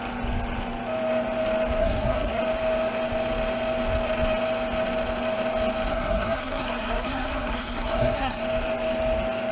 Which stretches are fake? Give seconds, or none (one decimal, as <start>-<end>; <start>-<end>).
1.8-2.4; 5.9-8.4